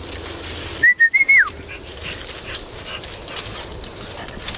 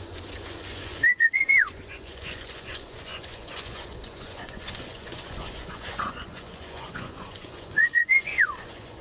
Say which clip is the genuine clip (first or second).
first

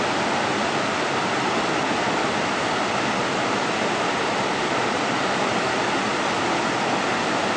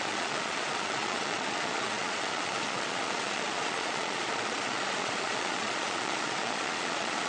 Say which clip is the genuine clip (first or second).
first